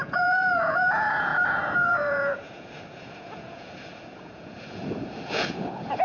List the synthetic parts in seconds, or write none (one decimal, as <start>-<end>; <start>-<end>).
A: 0.0-6.0